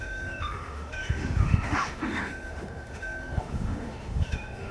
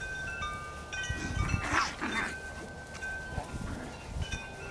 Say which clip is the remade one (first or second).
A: first